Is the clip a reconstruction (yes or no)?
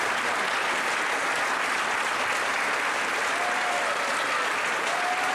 no